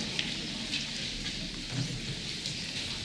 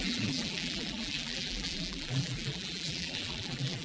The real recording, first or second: first